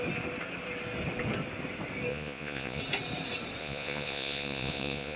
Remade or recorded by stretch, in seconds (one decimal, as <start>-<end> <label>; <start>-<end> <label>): 0.0-2.1 recorded; 2.1-2.8 remade; 2.8-3.6 recorded; 3.6-5.2 remade